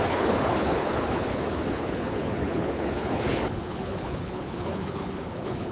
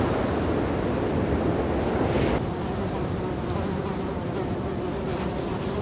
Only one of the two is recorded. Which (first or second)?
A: second